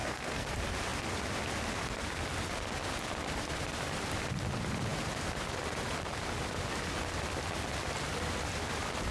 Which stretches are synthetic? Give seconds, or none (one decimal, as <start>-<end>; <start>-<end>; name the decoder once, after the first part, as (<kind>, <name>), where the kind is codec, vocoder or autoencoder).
0.0-0.5 (codec, SNAC)